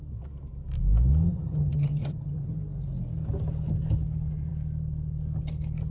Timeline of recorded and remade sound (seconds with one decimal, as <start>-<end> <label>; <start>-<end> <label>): 0.0-1.3 recorded; 1.3-2.5 remade; 2.5-5.9 recorded